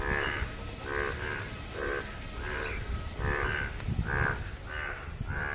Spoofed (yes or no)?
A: no